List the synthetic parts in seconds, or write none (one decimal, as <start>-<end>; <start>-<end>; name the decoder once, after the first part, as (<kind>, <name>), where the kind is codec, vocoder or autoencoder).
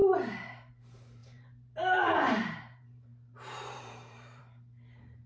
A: 0.0-0.7 (vocoder, BigVGAN v2); 1.2-4.4